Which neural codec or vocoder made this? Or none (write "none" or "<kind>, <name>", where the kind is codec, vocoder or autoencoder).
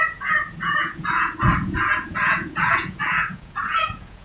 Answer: vocoder, Vocos